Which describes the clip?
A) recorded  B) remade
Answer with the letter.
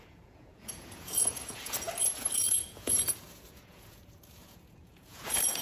B